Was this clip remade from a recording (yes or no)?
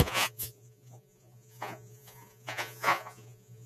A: yes